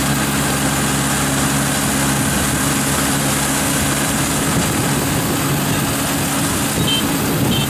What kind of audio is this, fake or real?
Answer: real